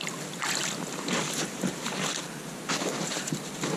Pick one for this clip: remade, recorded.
recorded